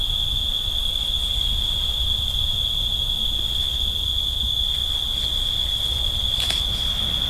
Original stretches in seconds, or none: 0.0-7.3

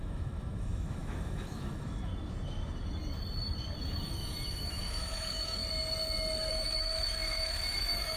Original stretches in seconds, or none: 2.1-3.8; 5.6-6.5

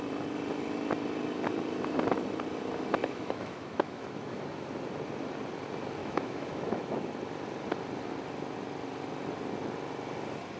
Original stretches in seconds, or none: 0.0-3.0; 4.4-6.0; 7.1-10.6

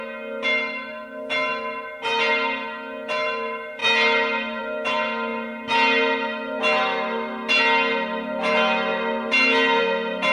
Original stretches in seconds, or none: 0.0-10.3

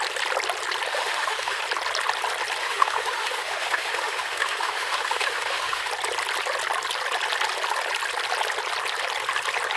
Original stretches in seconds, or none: 0.0-0.9; 1.6-2.6; 5.9-9.8

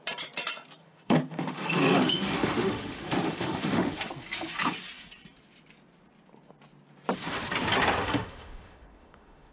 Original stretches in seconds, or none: 0.0-0.8; 4.1-8.0

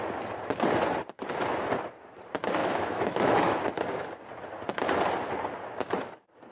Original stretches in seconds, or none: 0.0-2.6; 3.6-6.5